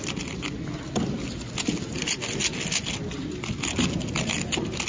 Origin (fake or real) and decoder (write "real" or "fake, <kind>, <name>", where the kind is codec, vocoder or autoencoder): real